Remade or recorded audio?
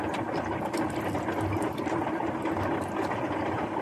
recorded